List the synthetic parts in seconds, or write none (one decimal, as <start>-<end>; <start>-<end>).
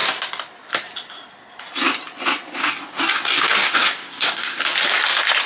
2.6-4.6